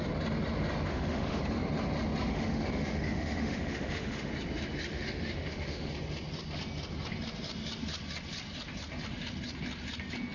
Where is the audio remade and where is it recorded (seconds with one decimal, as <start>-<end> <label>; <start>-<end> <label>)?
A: 0.0-0.9 recorded; 0.9-1.4 remade; 1.4-2.3 recorded; 2.3-4.3 remade; 4.3-4.9 recorded; 4.9-5.9 remade; 5.9-10.3 recorded